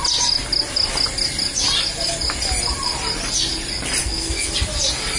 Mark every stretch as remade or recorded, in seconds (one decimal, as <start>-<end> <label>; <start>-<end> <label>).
0.0-4.0 recorded; 4.0-4.5 remade; 4.5-5.2 recorded